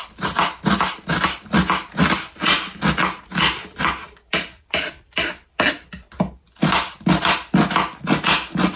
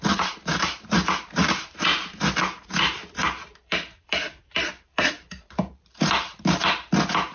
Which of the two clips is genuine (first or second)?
first